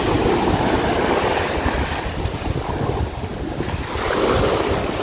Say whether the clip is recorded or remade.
recorded